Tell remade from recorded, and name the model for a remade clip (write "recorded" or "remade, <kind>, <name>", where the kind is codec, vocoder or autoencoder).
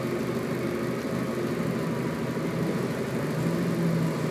recorded